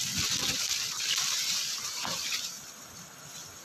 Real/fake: real